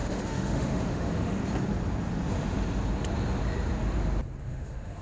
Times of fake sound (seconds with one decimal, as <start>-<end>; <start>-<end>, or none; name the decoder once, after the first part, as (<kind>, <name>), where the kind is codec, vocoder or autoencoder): 0.0-1.4 (autoencoder, DAC-VAE); 4.4-5.0